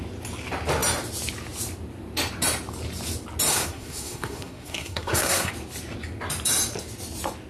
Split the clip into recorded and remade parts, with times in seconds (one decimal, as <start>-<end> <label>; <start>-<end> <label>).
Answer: 0.0-3.5 recorded; 3.5-5.5 remade; 5.5-7.5 recorded